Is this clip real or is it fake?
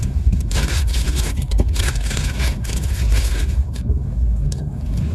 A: fake